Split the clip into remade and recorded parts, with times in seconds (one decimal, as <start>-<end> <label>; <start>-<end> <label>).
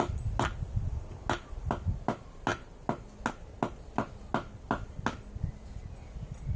0.0-6.6 recorded